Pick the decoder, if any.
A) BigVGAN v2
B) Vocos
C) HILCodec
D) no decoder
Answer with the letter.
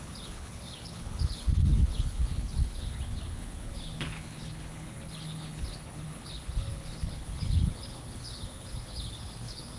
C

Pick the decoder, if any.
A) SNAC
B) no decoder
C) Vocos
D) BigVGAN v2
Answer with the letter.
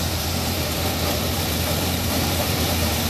D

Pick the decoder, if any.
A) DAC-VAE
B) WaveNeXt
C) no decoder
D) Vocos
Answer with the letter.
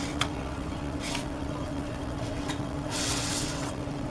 B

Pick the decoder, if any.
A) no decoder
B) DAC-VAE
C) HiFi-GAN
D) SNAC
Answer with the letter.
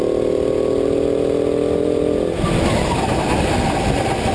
A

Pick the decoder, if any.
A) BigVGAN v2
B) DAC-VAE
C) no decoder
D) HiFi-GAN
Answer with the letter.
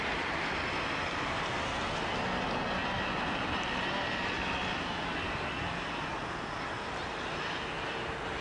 C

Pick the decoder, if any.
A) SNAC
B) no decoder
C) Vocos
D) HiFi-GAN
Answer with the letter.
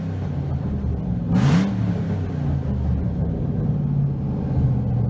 B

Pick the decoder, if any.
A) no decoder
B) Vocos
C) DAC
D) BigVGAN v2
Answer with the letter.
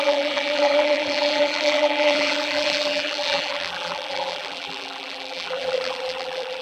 D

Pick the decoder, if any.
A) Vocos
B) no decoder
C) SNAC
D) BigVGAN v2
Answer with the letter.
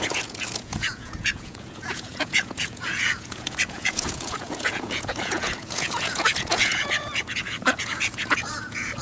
A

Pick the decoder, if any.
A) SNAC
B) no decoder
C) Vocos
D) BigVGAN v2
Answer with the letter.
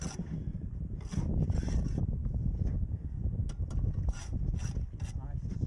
B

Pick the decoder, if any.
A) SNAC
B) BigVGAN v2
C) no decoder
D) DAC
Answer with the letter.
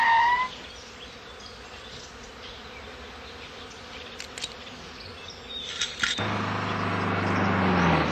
C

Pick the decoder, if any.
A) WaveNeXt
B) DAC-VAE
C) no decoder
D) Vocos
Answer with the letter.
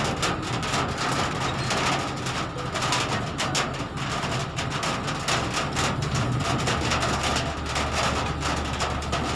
C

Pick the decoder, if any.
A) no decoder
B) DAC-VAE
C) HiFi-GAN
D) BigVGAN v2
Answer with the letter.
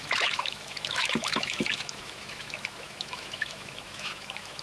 B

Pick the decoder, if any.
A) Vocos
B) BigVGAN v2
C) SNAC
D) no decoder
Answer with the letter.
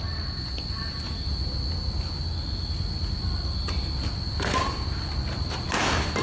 D